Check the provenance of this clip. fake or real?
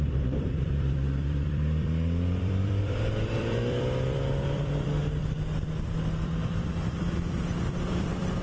fake